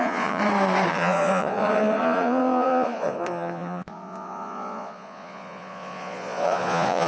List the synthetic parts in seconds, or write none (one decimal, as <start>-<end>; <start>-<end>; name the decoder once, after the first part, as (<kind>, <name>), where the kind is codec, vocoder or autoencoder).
0.0-0.4 (vocoder, Vocos); 0.9-7.1